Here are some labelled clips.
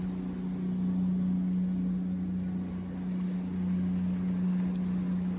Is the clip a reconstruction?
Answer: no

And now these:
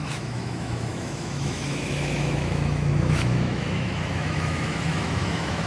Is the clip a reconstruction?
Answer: yes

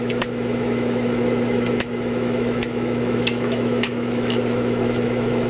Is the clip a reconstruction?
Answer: yes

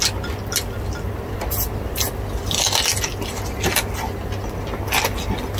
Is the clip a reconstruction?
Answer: no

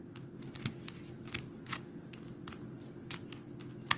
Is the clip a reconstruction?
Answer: no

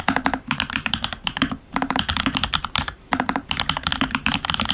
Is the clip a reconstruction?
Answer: yes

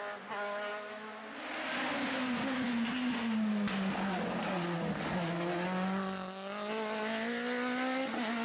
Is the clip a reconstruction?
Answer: no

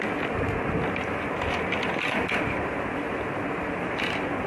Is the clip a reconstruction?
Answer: no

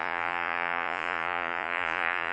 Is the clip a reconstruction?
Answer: yes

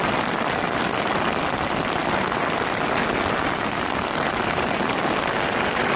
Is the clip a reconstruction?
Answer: no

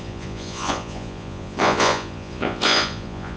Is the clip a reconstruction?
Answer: yes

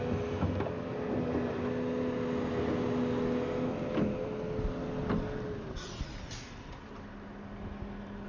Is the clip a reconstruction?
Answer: no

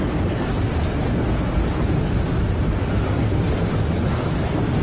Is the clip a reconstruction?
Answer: no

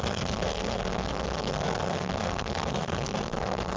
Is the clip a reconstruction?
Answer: yes